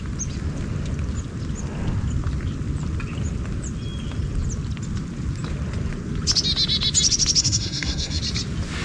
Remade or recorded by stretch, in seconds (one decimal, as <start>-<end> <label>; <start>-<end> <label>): 0.0-7.4 recorded; 7.4-8.2 remade; 8.2-8.8 recorded